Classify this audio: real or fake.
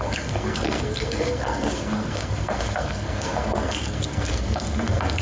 fake